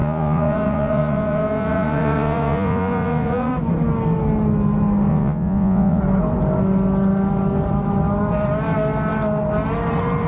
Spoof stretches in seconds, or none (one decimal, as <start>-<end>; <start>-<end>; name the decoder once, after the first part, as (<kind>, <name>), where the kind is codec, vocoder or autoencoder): 0.0-3.5 (vocoder, Vocos); 5.1-6.0